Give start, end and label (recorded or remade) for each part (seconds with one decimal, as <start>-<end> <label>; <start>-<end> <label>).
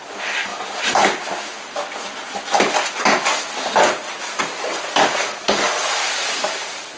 0.0-6.0 recorded; 6.0-6.6 remade; 6.6-7.0 recorded